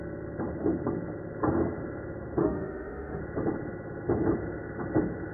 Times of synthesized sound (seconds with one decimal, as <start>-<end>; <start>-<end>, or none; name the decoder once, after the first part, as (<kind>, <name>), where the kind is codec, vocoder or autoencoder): 2.4-3.2 (autoencoder, DAC-VAE)